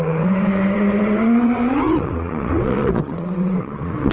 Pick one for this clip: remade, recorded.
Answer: remade